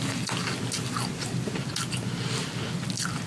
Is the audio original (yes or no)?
yes